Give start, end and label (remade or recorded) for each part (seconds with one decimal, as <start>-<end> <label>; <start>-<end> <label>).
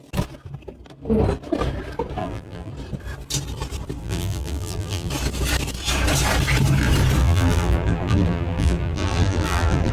0.0-2.2 recorded; 2.2-2.7 remade; 2.7-4.0 recorded; 4.0-5.1 remade; 5.1-7.2 recorded; 7.2-9.9 remade